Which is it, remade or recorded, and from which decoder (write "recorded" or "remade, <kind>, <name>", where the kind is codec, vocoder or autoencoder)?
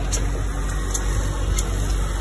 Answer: recorded